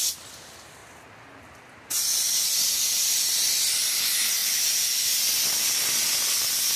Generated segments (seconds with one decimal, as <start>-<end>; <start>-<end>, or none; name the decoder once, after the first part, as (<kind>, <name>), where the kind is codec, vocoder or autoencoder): none